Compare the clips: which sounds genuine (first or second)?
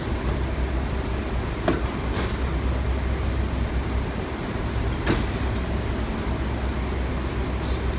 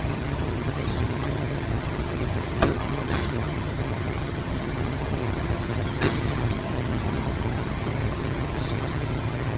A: first